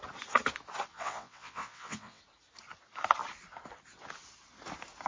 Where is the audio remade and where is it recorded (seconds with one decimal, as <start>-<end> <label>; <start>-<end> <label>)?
0.0-0.9 recorded; 0.9-2.2 remade; 2.2-5.1 recorded